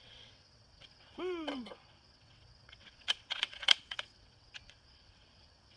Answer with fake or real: fake